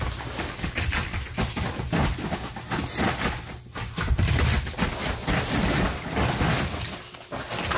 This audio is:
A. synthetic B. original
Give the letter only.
B